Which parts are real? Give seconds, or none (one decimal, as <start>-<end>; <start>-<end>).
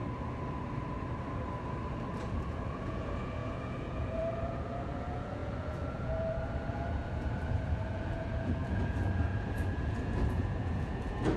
0.0-2.2